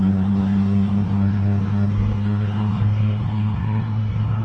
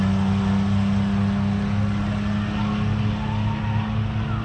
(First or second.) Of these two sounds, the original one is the second